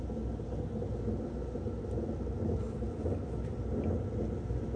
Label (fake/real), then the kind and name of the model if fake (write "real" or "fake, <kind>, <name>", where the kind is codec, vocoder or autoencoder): real